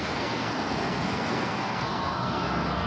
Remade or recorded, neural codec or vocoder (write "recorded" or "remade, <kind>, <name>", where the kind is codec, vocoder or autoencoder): remade, codec, SNAC